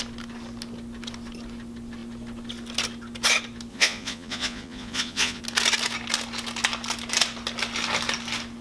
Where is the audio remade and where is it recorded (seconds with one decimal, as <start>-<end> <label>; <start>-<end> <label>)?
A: 0.0-3.7 recorded; 3.7-5.4 remade; 5.4-8.6 recorded

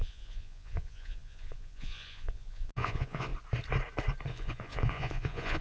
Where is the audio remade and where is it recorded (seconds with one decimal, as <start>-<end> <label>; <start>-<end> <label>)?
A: 0.0-3.3 remade; 3.3-4.3 recorded; 4.3-5.6 remade

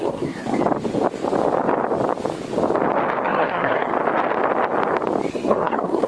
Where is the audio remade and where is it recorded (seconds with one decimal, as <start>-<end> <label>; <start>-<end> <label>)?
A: 0.0-0.6 remade; 0.6-3.2 recorded; 3.2-3.9 remade; 3.9-5.3 recorded; 5.3-6.1 remade

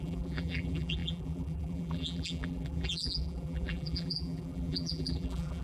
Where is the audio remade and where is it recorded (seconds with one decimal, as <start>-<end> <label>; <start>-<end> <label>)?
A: 0.0-5.6 remade

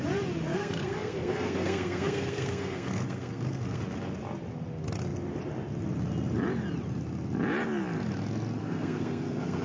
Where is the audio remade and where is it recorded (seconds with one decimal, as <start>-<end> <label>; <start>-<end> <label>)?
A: 0.0-0.5 recorded; 0.5-3.8 remade; 3.8-8.6 recorded; 8.6-9.6 remade

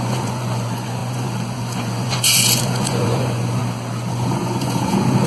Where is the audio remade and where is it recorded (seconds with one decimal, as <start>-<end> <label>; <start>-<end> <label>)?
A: 0.0-3.6 remade; 3.6-4.1 recorded; 4.1-5.3 remade

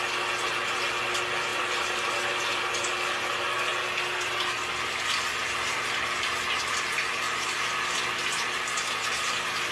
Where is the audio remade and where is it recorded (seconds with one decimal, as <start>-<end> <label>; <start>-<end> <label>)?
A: 0.0-9.7 recorded